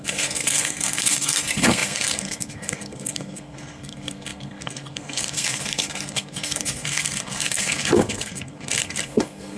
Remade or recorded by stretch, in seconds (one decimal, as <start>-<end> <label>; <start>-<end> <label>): 0.0-9.6 remade